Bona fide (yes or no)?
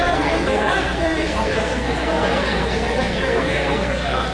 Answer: no